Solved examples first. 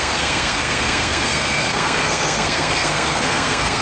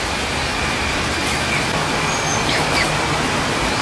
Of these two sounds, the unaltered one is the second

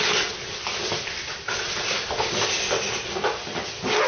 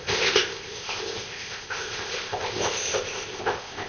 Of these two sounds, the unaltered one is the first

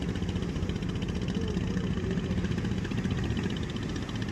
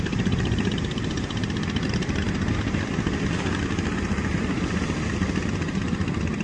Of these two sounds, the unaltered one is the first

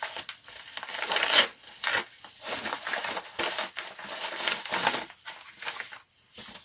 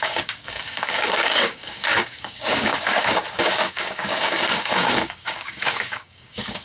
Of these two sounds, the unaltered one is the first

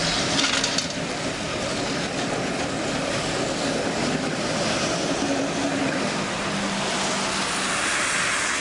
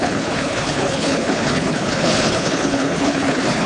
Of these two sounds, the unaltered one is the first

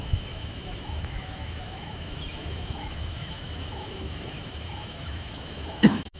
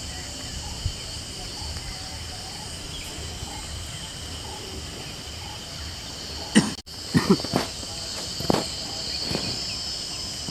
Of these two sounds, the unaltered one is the second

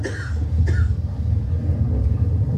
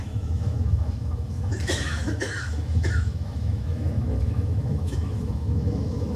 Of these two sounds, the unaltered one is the first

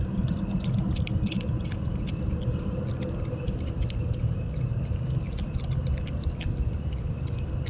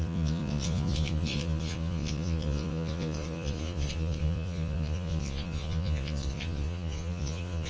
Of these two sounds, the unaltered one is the first